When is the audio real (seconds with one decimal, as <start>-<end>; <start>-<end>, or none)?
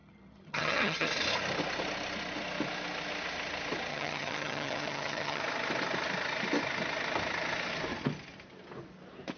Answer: 1.1-3.9; 5.4-9.4